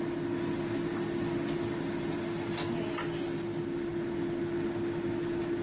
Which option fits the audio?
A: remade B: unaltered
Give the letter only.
B